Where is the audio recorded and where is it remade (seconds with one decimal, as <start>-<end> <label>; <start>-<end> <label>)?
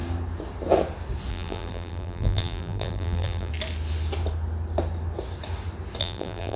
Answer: 0.0-1.3 recorded; 1.3-3.5 remade; 3.5-6.0 recorded; 6.0-6.6 remade